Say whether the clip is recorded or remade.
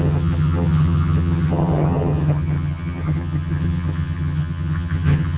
remade